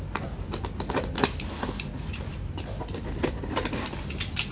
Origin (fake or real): real